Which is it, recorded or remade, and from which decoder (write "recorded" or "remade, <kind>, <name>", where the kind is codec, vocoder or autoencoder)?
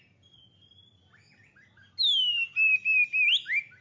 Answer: recorded